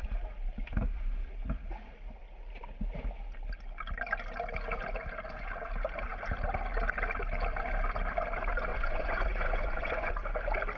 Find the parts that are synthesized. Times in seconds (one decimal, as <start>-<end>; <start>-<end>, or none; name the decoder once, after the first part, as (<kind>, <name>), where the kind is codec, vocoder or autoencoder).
8.7-10.1 (vocoder, Vocos)